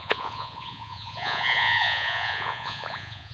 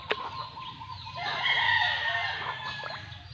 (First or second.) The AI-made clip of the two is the first